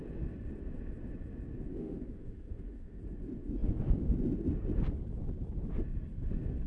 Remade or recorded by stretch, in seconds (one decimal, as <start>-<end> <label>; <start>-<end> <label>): 0.0-1.7 recorded; 1.7-3.0 remade; 3.0-6.7 recorded